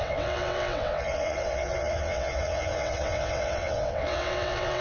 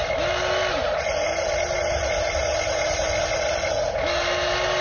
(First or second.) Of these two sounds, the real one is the second